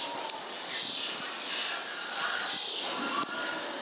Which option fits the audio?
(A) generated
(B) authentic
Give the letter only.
B